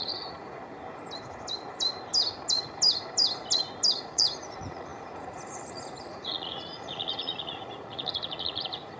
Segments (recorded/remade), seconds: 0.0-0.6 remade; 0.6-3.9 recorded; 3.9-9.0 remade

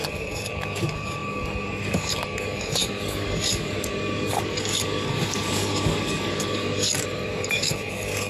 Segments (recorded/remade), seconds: 0.0-8.3 remade

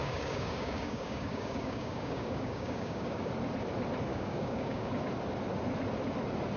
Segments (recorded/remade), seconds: 0.0-3.3 remade; 3.3-4.1 recorded; 4.1-4.9 remade; 4.9-6.6 recorded

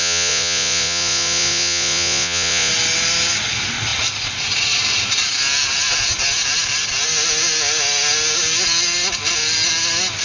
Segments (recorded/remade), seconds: 0.0-2.7 remade; 2.7-10.2 recorded

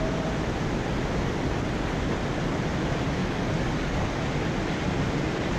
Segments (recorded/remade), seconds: 0.0-3.2 recorded; 3.2-4.2 remade; 4.2-5.6 recorded